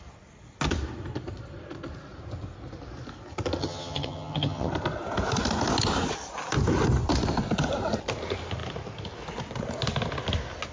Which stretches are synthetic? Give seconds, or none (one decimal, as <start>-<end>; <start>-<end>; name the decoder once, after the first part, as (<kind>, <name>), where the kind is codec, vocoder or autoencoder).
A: 3.6-4.7 (vocoder, HiFi-GAN)